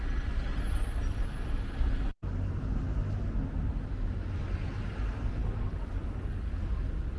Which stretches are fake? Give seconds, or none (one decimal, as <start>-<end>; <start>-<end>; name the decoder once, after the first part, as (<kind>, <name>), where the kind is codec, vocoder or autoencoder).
5.4-6.5 (codec, DAC)